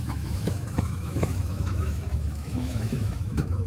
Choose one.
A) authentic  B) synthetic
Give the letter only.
B